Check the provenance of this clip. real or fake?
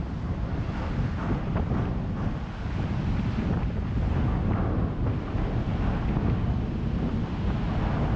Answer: real